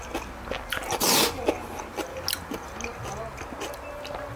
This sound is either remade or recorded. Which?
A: recorded